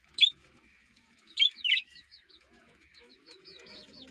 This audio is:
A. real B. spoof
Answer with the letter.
B